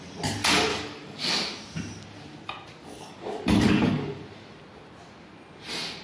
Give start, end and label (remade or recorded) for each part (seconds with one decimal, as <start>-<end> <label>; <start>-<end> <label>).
0.0-0.7 recorded; 0.7-1.3 remade; 1.3-2.8 recorded; 2.8-4.2 remade; 4.2-6.0 recorded